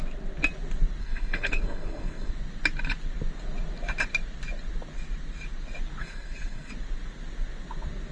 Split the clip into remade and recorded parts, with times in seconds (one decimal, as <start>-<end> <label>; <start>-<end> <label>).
0.0-1.0 recorded; 1.0-2.3 remade; 2.3-6.0 recorded; 6.0-6.7 remade; 6.7-8.1 recorded